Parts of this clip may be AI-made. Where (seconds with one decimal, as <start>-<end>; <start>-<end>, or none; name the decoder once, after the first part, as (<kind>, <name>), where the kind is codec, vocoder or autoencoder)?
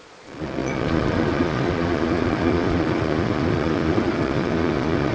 0.0-5.1 (vocoder, Vocos)